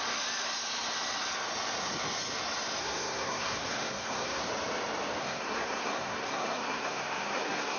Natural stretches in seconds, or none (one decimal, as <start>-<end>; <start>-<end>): 0.0-2.8; 4.4-5.2